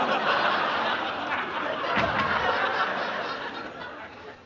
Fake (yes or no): no